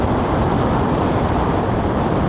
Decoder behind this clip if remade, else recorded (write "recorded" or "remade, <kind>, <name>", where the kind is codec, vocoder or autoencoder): remade, vocoder, BigVGAN v2